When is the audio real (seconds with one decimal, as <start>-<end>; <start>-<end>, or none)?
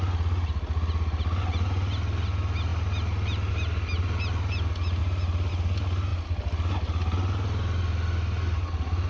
0.0-9.1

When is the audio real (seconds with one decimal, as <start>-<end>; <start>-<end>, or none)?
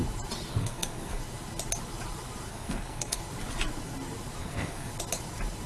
0.0-0.5; 1.2-2.5; 3.2-4.4; 4.9-5.7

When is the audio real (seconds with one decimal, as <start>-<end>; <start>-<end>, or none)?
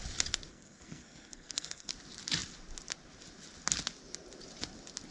0.0-0.5; 1.9-5.1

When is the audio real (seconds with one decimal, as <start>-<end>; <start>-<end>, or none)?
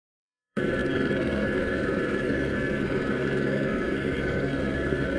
none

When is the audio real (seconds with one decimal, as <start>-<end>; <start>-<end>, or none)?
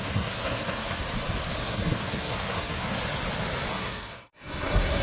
1.0-1.6; 3.0-3.7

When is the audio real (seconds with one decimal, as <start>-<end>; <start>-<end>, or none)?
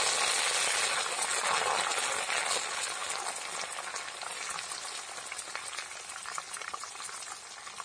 0.0-7.8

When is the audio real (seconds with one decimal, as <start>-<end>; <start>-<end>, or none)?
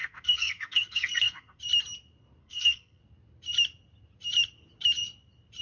1.6-2.4; 3.0-5.6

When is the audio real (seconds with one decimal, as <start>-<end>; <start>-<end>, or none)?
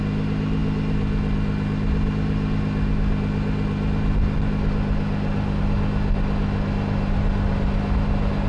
0.0-8.5